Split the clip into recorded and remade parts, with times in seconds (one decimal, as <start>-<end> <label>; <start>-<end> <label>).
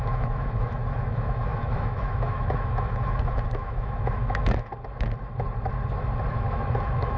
0.0-4.7 remade; 4.7-6.3 recorded; 6.3-7.2 remade